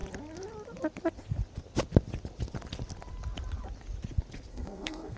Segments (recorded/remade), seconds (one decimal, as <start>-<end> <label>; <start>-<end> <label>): 0.0-4.5 recorded; 4.5-5.2 remade